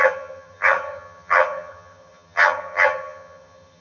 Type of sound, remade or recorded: remade